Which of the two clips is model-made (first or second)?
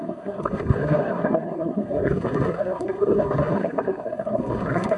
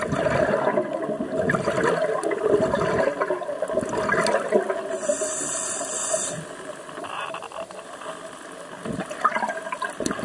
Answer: first